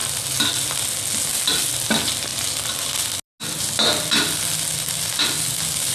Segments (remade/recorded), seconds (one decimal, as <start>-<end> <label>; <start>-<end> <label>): 0.0-5.9 recorded